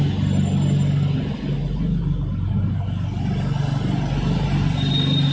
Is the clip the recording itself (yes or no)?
yes